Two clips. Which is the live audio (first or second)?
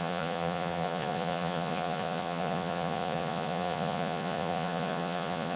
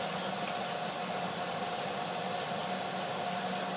second